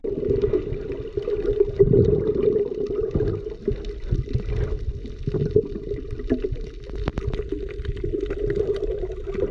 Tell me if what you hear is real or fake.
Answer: real